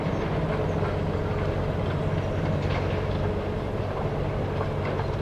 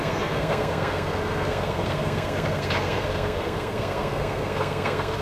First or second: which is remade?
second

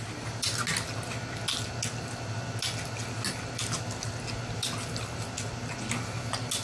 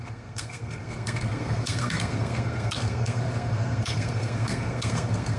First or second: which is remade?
second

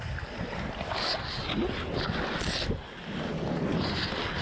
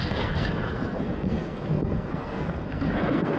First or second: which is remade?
second